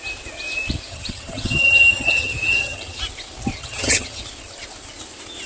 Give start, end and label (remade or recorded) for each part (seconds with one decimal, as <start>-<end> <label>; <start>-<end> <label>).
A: 0.0-0.9 recorded; 0.9-3.0 remade; 3.0-3.6 recorded; 3.6-4.2 remade; 4.2-5.5 recorded